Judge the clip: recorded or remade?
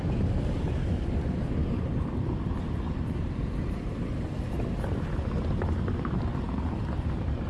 recorded